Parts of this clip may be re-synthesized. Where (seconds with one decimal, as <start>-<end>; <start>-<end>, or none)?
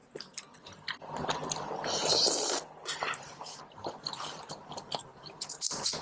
0.0-6.0